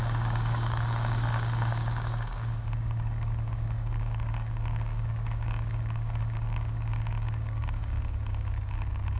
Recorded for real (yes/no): no